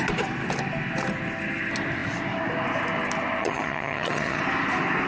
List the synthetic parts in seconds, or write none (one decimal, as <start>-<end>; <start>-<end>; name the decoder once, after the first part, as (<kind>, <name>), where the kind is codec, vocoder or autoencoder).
3.4-4.4 (vocoder, HiFi-GAN)